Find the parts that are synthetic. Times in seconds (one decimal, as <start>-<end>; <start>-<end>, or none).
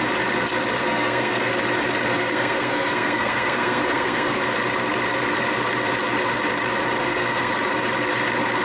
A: 0.8-1.5; 2.1-4.4; 7.0-7.5